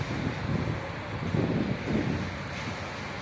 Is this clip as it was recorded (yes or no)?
yes